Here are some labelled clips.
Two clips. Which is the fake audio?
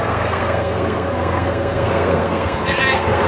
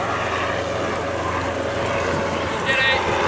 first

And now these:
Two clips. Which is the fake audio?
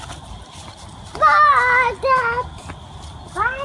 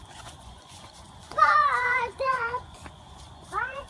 second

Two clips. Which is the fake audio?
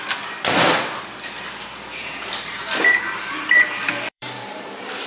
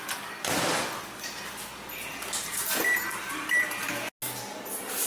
first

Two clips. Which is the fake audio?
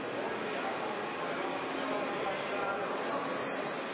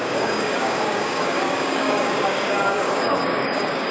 second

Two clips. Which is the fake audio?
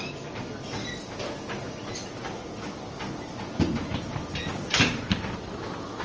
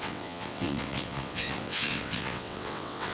second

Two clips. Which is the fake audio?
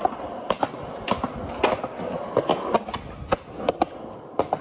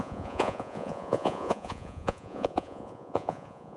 second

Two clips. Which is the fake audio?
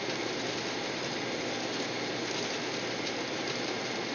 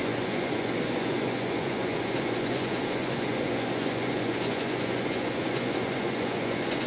second